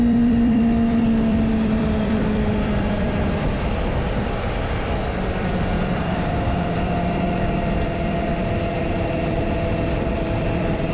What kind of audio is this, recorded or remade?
remade